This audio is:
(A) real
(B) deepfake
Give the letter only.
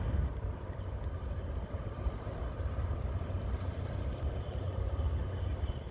A